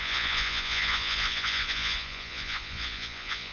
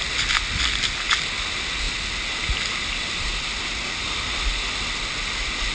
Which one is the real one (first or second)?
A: second